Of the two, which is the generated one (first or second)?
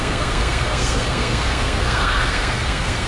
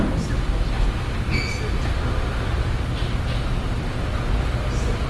first